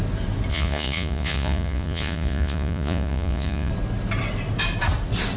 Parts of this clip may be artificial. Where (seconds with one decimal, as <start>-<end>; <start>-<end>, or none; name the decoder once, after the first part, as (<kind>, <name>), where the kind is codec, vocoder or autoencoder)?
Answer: 0.5-3.7 (vocoder, Vocos)